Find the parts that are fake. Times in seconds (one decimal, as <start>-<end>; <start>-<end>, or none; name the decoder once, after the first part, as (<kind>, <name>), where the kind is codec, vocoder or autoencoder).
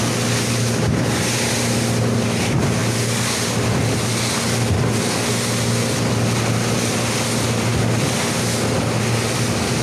none